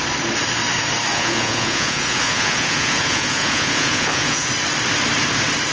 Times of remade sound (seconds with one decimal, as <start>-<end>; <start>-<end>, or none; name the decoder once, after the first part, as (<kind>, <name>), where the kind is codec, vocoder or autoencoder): 1.1-4.5 (vocoder, Vocos)